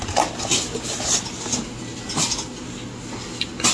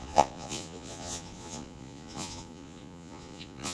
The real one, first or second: first